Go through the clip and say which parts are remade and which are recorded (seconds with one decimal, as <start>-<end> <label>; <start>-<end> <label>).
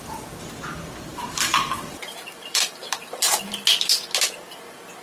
0.0-1.1 recorded; 1.1-3.5 remade; 3.5-5.0 recorded